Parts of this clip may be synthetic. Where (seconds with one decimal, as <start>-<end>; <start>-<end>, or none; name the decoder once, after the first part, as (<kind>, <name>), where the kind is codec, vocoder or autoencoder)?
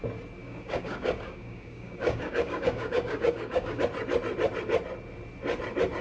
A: 0.4-3.8 (codec, DAC)